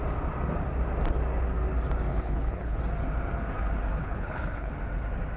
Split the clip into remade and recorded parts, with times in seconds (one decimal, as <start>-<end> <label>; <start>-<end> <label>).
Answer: 0.0-2.1 recorded; 2.1-2.8 remade; 2.8-4.0 recorded; 4.0-4.7 remade; 4.7-5.4 recorded